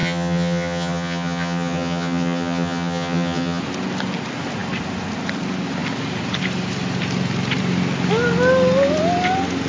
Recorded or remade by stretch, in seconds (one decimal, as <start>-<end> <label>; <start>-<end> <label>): 0.0-3.6 remade; 3.6-9.7 recorded

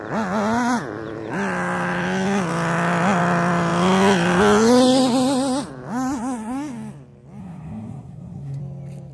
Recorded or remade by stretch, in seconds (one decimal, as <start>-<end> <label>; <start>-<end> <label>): 0.0-7.4 recorded; 7.4-8.6 remade; 8.6-9.1 recorded

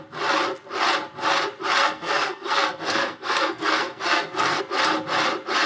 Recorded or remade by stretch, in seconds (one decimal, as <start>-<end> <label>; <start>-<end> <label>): 0.0-1.8 recorded; 1.8-4.6 remade; 4.6-5.7 recorded

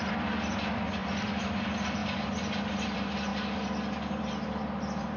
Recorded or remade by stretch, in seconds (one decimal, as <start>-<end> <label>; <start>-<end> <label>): 0.0-3.3 remade; 3.3-4.2 recorded; 4.2-5.2 remade

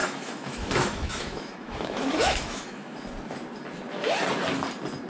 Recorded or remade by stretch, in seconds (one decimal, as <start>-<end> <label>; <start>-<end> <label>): 0.0-3.1 remade; 3.1-5.1 recorded